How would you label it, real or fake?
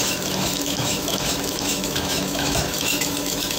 fake